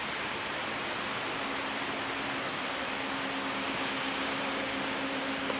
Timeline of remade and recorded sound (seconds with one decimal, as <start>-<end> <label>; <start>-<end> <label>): 0.0-2.4 recorded; 2.4-2.9 remade; 2.9-5.6 recorded